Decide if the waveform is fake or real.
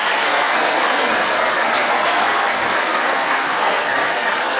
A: fake